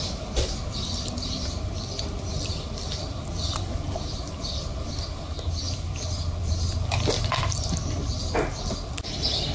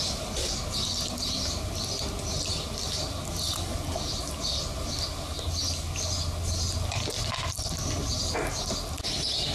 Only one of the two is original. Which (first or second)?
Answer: second